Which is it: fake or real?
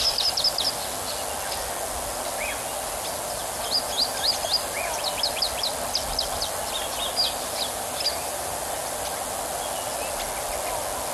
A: real